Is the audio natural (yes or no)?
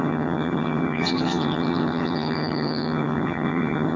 no